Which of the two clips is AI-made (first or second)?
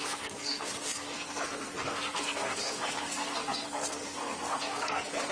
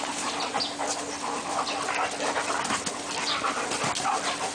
first